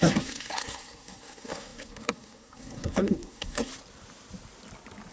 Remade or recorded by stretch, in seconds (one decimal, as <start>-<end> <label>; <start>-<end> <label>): 0.0-3.7 remade; 3.7-5.1 recorded